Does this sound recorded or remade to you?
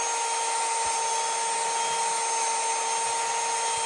recorded